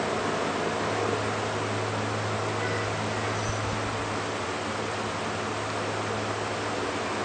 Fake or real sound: real